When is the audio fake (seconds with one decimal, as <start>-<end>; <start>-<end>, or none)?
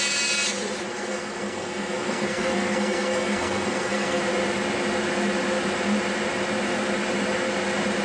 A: 0.9-4.2